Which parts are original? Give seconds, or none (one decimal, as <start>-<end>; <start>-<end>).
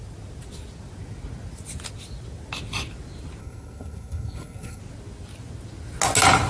0.0-3.4; 4.8-6.5